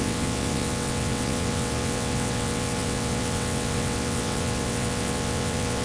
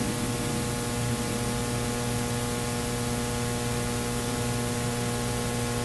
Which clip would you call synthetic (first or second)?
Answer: first